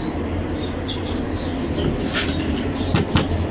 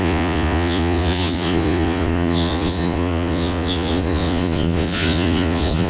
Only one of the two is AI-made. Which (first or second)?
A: second